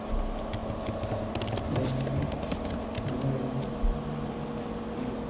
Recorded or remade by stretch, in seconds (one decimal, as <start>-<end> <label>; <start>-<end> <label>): 0.0-5.3 recorded